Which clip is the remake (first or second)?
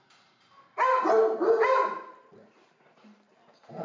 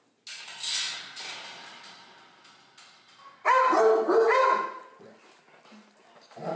first